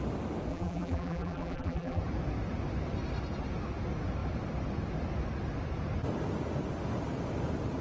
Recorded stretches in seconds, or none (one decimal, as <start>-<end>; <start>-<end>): 0.0-0.5; 2.0-7.8